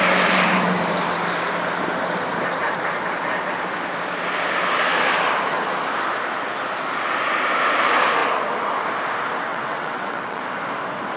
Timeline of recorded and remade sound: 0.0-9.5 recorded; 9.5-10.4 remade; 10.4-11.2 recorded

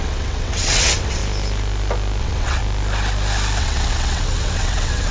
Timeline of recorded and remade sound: 0.0-1.2 remade; 1.2-2.2 recorded; 2.2-2.6 remade; 2.6-3.6 recorded; 3.6-5.1 remade

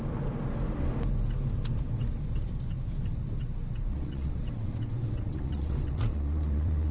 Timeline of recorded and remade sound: 0.0-3.9 recorded; 3.9-6.9 remade

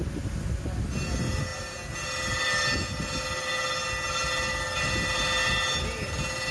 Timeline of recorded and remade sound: 0.0-6.5 recorded

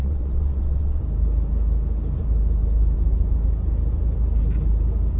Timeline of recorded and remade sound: 0.0-1.0 remade; 1.0-5.2 recorded

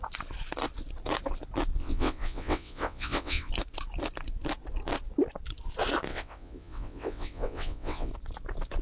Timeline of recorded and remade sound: 0.0-1.8 recorded; 1.8-3.5 remade; 3.5-6.1 recorded; 6.1-8.1 remade; 8.1-8.8 recorded

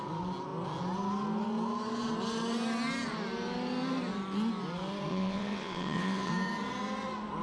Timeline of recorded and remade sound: 0.0-5.1 recorded; 5.1-6.3 remade; 6.3-7.4 recorded